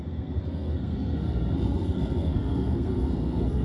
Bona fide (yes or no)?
no